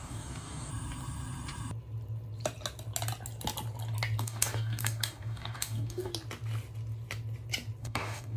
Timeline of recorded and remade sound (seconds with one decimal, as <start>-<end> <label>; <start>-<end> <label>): 0.0-0.7 remade; 0.7-4.2 recorded; 4.2-6.1 remade; 6.1-7.8 recorded; 7.8-8.4 remade